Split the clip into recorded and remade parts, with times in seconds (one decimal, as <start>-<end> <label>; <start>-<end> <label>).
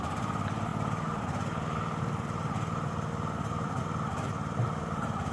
0.0-5.3 remade